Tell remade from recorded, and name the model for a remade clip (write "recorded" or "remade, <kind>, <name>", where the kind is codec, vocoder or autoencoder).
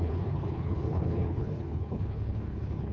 remade, codec, HILCodec